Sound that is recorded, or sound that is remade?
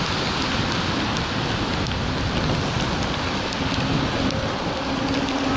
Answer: recorded